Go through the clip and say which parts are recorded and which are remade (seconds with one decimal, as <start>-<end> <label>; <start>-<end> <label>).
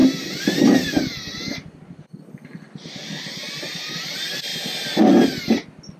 0.0-3.6 recorded; 3.6-4.5 remade; 4.5-6.0 recorded